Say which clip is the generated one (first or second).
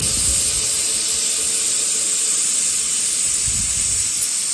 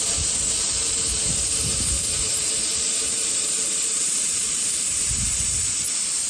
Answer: second